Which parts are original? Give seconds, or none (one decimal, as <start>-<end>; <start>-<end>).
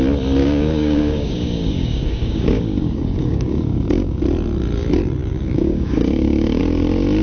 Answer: 0.0-0.4; 4.2-5.2; 6.6-7.2